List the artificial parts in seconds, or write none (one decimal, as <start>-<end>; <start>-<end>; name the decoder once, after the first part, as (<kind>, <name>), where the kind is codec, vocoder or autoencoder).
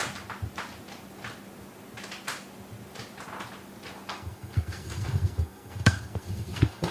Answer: 4.1-6.9 (codec, SNAC)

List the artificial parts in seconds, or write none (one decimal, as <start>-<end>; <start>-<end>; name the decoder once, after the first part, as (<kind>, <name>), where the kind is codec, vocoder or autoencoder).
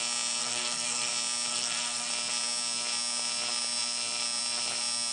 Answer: 0.4-1.1 (codec, SNAC); 1.5-2.1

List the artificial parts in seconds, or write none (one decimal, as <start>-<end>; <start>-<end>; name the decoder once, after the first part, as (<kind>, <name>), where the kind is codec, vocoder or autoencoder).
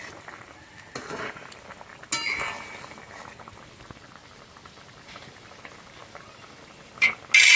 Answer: none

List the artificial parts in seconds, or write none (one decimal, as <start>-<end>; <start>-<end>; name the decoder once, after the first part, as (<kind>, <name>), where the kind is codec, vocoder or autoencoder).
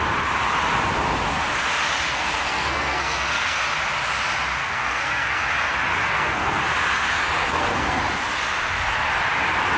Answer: 2.1-3.6 (codec, SNAC); 4.6-5.5; 6.0-6.6; 7.4-8.0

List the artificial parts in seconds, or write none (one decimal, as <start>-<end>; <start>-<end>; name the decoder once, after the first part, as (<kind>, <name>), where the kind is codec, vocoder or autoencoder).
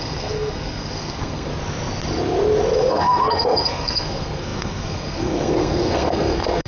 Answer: 0.0-1.5 (codec, SNAC); 2.9-6.7